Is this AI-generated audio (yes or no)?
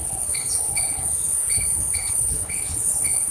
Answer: yes